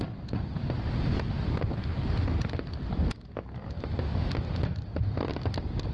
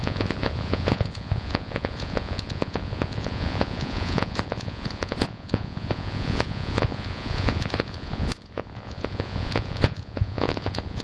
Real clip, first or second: first